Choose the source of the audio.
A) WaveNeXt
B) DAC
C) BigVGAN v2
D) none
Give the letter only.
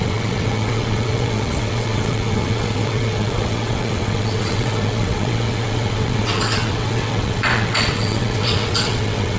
A